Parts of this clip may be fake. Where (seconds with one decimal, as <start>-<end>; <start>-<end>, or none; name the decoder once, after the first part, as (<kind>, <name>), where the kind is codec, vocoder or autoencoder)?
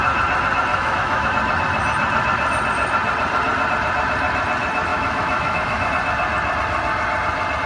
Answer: 0.7-1.3 (autoencoder, DAC-VAE); 4.9-5.9